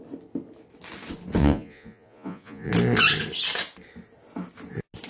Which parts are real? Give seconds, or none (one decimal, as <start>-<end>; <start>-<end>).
0.0-1.4; 2.7-5.1